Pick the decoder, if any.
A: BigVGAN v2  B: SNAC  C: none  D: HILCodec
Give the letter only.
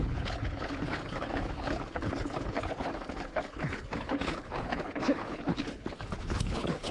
D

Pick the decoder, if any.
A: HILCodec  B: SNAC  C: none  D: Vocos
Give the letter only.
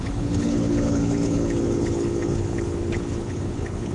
A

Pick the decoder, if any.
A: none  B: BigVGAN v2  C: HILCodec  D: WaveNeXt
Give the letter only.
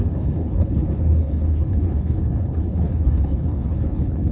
C